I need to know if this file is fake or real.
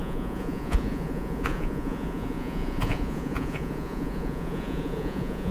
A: fake